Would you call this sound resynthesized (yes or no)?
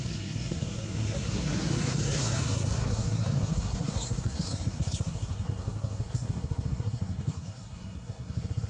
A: yes